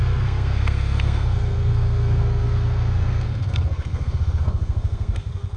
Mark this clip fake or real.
fake